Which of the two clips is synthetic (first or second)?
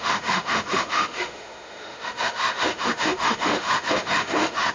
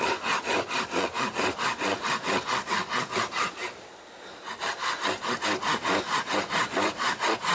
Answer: first